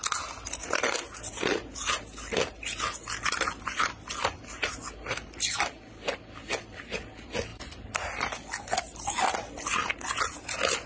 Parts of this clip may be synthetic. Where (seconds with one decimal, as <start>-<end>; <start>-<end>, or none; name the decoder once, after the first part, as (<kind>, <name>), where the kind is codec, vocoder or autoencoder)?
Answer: none